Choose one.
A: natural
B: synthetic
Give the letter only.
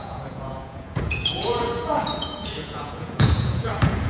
B